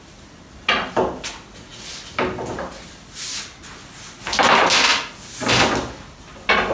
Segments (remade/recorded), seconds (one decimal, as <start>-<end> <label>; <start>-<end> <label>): 0.0-6.7 recorded